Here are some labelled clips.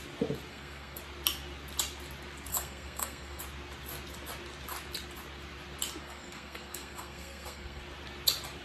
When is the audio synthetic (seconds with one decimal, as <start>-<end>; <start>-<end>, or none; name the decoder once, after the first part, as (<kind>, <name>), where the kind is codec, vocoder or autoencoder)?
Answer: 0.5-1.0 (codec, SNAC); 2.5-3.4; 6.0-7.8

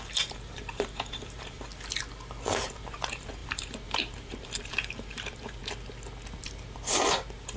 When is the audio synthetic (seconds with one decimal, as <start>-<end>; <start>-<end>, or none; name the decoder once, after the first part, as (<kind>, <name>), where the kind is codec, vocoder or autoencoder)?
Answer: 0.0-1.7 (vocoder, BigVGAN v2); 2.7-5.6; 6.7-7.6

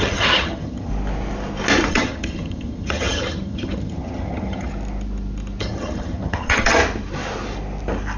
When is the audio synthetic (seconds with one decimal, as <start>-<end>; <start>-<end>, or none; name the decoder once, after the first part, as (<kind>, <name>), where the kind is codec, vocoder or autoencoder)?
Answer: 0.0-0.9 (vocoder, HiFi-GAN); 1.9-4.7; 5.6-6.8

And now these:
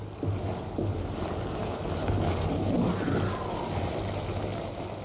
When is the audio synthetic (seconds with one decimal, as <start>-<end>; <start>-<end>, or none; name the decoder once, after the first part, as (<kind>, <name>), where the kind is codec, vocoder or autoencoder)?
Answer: none

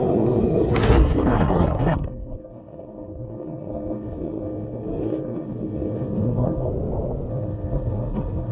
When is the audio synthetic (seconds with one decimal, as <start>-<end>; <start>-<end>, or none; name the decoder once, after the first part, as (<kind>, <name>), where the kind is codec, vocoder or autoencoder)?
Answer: 0.0-6.7 (codec, SNAC); 7.3-8.5

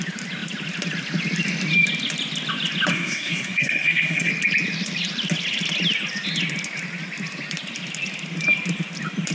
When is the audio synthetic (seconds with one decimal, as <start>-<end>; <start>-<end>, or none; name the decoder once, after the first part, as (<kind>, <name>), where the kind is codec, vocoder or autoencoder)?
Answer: 2.9-4.3 (codec, SNAC)